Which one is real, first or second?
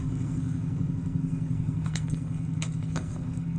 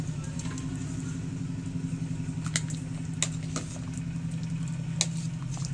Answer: second